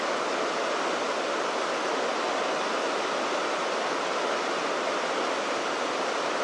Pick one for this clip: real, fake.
real